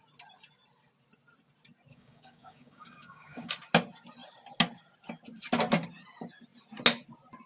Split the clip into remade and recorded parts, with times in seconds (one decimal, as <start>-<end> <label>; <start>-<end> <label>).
0.0-1.9 recorded; 1.9-3.5 remade; 3.5-7.5 recorded